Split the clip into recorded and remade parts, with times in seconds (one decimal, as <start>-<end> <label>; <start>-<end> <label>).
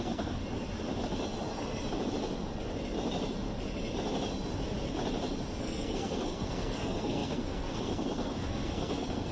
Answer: 0.0-0.4 remade; 0.4-5.6 recorded; 5.6-9.3 remade